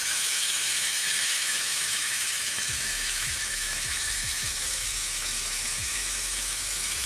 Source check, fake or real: fake